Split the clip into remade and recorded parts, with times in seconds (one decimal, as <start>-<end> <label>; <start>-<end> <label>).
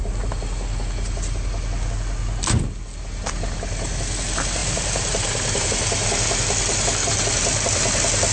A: 0.0-4.6 recorded; 4.6-5.7 remade; 5.7-8.3 recorded